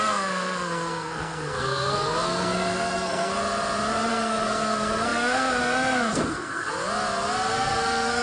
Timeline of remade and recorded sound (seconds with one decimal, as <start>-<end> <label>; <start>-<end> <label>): 0.0-3.3 remade; 3.3-4.1 recorded; 4.1-6.7 remade; 6.7-7.5 recorded; 7.5-8.2 remade